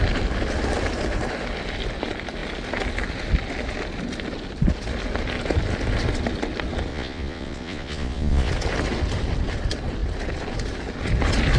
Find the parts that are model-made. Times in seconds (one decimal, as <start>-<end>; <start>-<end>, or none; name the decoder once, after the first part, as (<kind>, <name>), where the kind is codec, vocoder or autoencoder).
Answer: 6.9-8.5 (vocoder, Vocos)